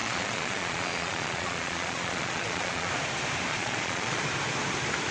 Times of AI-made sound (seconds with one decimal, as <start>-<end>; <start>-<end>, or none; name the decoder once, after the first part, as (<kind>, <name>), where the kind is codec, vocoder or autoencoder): 0.0-2.9 (vocoder, Vocos); 3.5-4.2